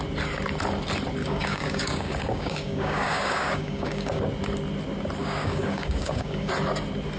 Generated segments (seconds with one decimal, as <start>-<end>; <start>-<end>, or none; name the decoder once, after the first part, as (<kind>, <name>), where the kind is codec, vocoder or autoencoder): 1.2-4.2 (codec, DAC); 5.2-6.5